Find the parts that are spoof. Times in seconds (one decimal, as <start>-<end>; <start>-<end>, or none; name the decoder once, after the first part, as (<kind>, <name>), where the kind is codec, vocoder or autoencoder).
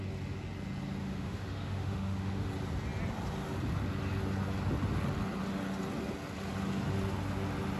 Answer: 1.0-2.5 (autoencoder, DAC-VAE)